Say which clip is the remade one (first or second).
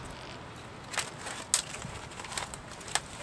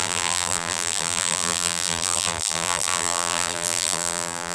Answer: second